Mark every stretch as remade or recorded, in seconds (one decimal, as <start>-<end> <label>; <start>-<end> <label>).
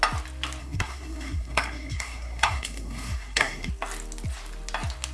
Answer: 0.0-0.6 recorded; 0.6-3.7 remade; 3.7-5.1 recorded